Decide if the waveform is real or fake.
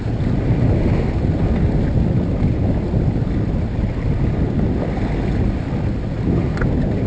real